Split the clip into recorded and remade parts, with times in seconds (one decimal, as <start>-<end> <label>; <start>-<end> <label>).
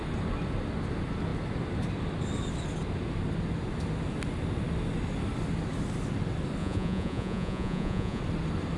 0.0-6.6 recorded; 6.6-8.2 remade; 8.2-8.8 recorded